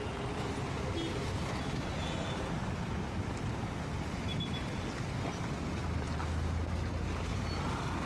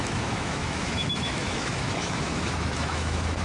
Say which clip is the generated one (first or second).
second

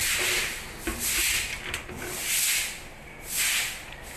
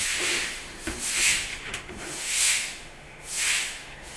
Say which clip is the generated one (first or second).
second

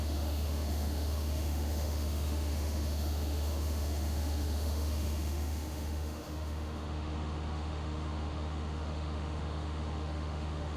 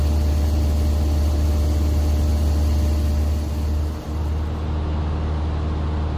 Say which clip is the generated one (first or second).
first